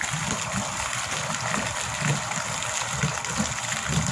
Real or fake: real